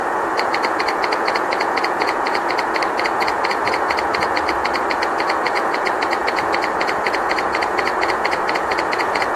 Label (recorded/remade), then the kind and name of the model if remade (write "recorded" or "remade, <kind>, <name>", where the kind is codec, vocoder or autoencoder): remade, vocoder, Vocos